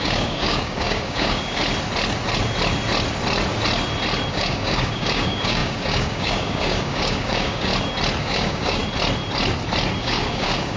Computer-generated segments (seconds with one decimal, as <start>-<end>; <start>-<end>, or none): 0.0-1.6; 4.3-7.7; 8.2-8.8; 10.0-10.8